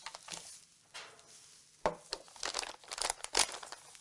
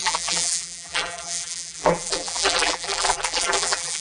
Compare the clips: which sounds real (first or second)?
first